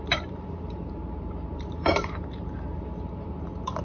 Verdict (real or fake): fake